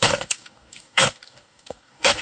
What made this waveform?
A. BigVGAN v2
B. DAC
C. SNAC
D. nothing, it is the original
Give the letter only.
B